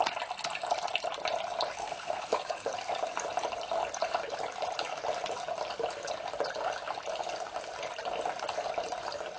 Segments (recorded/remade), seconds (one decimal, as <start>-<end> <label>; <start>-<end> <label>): 0.0-1.8 recorded; 1.8-2.7 remade; 2.7-9.4 recorded